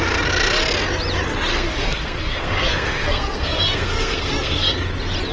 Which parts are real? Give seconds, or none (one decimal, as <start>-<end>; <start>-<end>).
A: 0.0-1.5; 4.7-5.3